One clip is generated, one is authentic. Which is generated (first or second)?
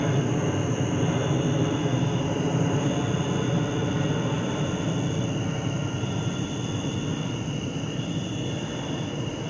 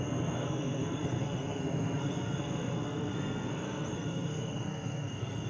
second